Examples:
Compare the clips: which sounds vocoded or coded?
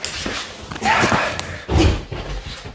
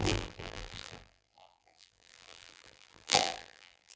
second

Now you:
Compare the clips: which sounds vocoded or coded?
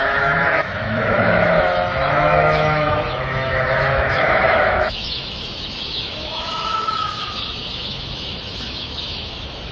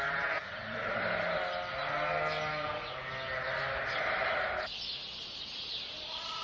first